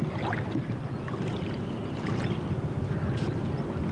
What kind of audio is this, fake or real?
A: real